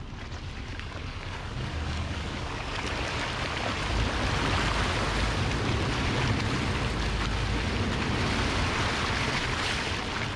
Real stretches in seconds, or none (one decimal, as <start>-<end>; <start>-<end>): 0.0-0.7; 2.8-10.4